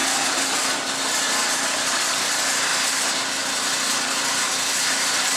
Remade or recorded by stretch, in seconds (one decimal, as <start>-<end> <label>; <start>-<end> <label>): 0.0-0.9 remade; 0.9-1.4 recorded; 1.4-2.3 remade; 2.3-5.4 recorded